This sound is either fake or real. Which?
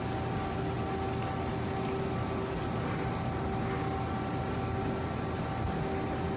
real